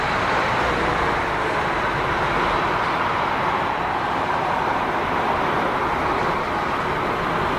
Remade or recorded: recorded